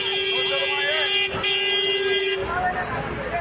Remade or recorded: recorded